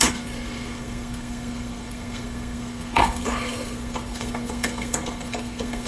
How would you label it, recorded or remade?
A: remade